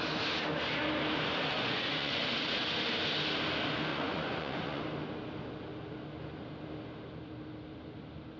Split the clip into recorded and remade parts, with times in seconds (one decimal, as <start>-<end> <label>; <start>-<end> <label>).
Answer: 0.0-1.5 recorded; 1.5-2.2 remade; 2.2-3.9 recorded; 3.9-4.8 remade; 4.8-8.4 recorded